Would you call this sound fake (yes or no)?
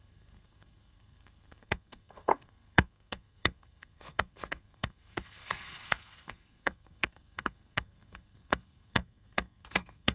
yes